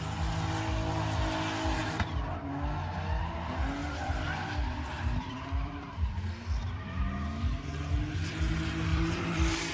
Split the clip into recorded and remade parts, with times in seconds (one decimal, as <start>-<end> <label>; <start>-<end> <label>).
0.0-3.8 recorded; 3.8-7.0 remade; 7.0-8.9 recorded; 8.9-9.7 remade